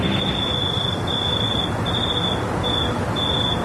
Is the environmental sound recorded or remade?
recorded